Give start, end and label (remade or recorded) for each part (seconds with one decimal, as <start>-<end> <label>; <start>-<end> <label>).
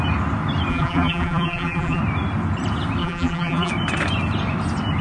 0.0-0.7 recorded; 0.7-2.0 remade; 2.0-3.0 recorded; 3.0-3.7 remade; 3.7-5.0 recorded